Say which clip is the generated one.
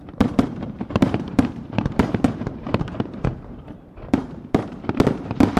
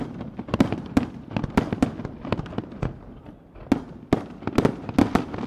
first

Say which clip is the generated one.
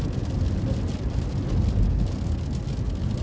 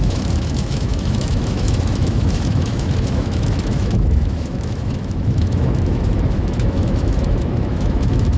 second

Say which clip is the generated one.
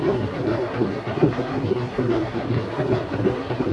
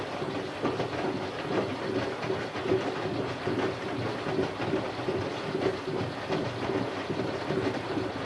first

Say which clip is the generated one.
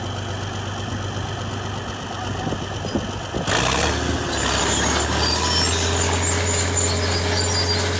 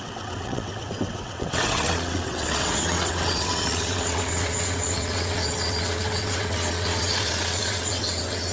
second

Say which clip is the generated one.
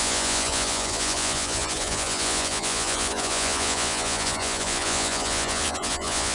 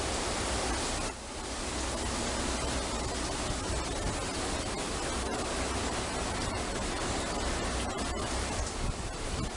first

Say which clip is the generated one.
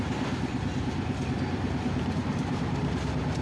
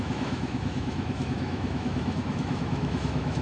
second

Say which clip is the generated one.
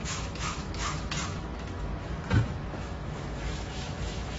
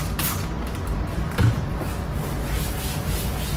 first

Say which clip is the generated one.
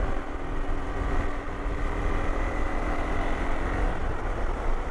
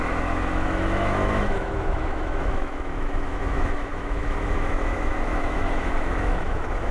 second